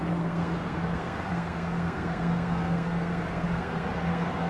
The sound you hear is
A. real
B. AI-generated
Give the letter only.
B